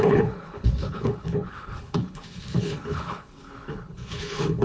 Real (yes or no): no